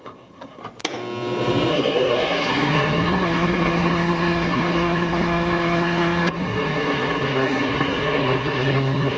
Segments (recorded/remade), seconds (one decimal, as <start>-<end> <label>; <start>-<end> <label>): 0.0-0.6 remade; 0.6-1.7 recorded; 1.7-9.2 remade